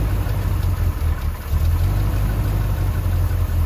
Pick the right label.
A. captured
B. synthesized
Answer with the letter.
A